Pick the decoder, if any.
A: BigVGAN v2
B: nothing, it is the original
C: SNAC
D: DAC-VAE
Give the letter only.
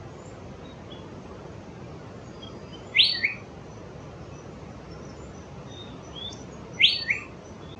B